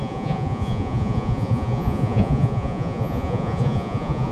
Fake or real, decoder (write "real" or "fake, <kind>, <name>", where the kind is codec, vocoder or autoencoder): fake, vocoder, Vocos